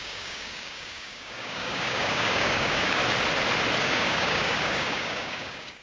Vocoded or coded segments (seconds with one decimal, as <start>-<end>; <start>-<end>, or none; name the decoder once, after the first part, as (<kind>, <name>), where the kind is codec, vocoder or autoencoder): 0.0-3.0 (codec, DAC); 3.8-5.8